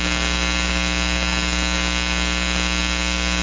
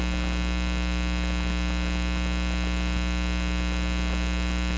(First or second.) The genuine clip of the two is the second